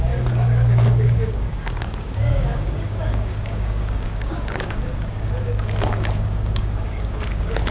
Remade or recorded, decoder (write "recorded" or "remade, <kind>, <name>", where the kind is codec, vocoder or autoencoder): remade, codec, DAC